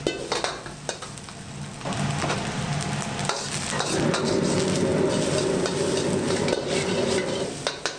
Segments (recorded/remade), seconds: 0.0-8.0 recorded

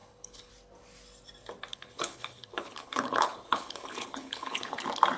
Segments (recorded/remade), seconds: 0.0-0.5 remade; 0.5-1.7 recorded; 1.7-4.8 remade; 4.8-5.2 recorded

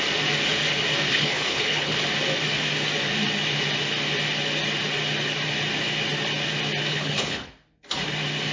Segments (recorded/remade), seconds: 0.0-1.1 recorded; 1.1-2.0 remade; 2.0-6.9 recorded; 6.9-7.5 remade; 7.5-8.5 recorded

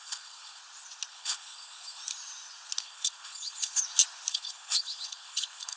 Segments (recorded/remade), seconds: 0.0-0.6 remade; 0.6-1.1 recorded; 1.1-2.0 remade; 2.0-2.8 recorded; 2.8-3.8 remade; 3.8-4.3 recorded; 4.3-5.8 remade

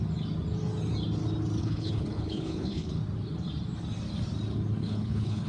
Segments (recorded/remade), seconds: 0.0-1.6 recorded; 1.6-3.0 remade; 3.0-4.8 recorded; 4.8-5.5 remade

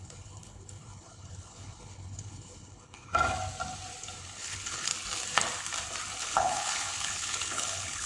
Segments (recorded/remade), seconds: 0.0-3.1 remade; 3.1-4.2 recorded; 4.2-4.9 remade; 4.9-6.2 recorded; 6.2-8.1 remade

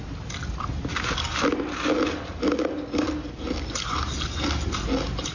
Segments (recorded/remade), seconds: 0.0-5.3 recorded

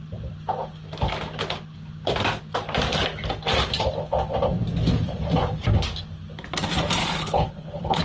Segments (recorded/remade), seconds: 0.0-7.0 recorded; 7.0-8.0 remade